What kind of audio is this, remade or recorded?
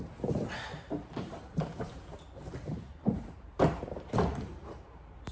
remade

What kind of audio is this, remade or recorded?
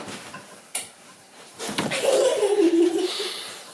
remade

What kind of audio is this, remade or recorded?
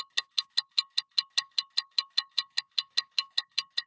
recorded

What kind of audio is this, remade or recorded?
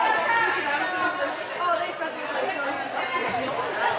recorded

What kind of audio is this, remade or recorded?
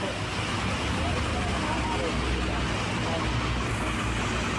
recorded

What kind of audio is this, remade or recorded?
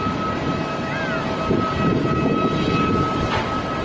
recorded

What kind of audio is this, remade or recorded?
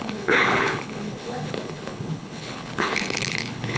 remade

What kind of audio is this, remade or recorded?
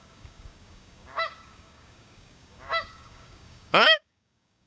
remade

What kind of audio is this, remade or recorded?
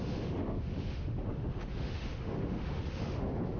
remade